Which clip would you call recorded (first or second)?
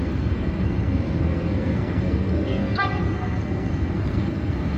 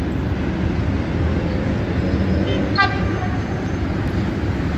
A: second